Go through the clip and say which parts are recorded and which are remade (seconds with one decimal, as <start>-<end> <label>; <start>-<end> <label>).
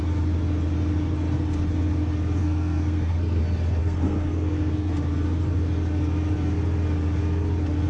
0.0-2.4 recorded; 2.4-3.4 remade; 3.4-3.8 recorded; 3.8-4.9 remade; 4.9-7.9 recorded